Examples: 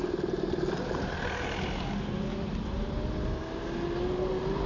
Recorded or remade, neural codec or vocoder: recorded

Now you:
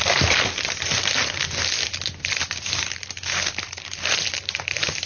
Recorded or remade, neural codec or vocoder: recorded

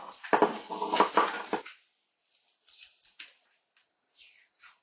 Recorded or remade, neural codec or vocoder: recorded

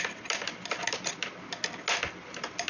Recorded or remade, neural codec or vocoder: recorded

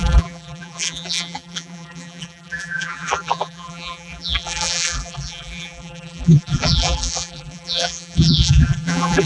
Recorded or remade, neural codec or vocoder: remade, vocoder, BigVGAN v2